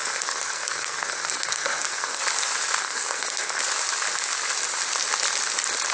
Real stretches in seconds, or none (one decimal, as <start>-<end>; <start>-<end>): 2.2-2.8; 3.6-5.9